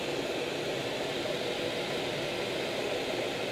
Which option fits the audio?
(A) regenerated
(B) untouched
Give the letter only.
B